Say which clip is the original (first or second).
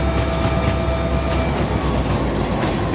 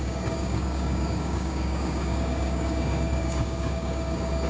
first